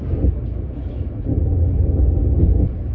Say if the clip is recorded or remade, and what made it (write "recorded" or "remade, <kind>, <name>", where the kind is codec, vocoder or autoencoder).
recorded